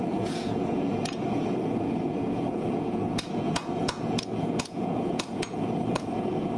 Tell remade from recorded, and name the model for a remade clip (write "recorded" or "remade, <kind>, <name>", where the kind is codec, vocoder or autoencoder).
remade, vocoder, Vocos